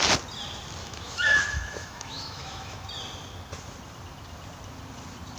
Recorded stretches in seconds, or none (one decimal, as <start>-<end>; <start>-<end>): 0.0-0.8; 2.9-5.4